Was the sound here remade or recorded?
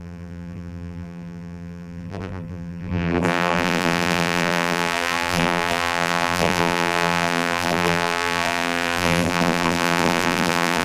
remade